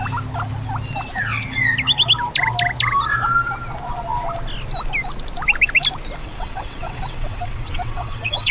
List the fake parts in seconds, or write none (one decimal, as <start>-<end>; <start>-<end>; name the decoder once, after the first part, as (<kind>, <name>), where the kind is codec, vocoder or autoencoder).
6.2-8.5 (vocoder, WaveNeXt)